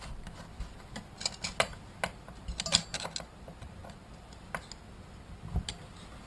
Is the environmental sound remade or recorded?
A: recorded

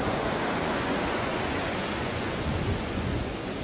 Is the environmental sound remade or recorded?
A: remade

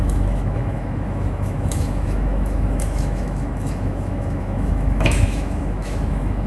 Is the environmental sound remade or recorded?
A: remade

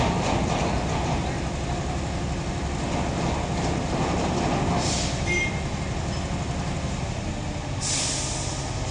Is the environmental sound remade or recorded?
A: recorded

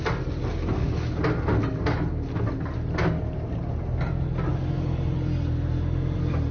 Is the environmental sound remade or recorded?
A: recorded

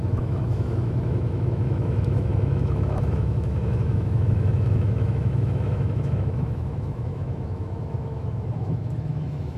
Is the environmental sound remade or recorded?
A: remade